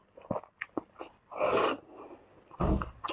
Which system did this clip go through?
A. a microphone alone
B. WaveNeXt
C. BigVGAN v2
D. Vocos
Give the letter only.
A